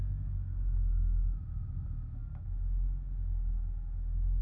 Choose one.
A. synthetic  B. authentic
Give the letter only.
A